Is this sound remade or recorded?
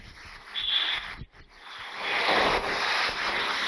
recorded